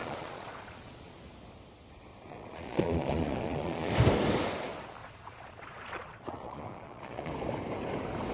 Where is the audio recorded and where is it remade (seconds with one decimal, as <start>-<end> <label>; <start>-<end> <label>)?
0.0-1.2 remade; 1.2-2.1 recorded; 2.1-3.9 remade; 3.9-5.0 recorded; 5.0-7.3 remade; 7.3-8.3 recorded